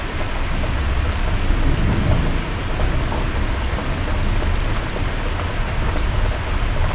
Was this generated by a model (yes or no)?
no